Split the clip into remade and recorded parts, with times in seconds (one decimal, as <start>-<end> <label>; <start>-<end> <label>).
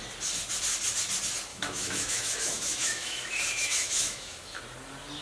0.0-1.5 recorded; 1.5-4.6 remade; 4.6-5.2 recorded